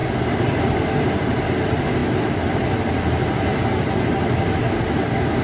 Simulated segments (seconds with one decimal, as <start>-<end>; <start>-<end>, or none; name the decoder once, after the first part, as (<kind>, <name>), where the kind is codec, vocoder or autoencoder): none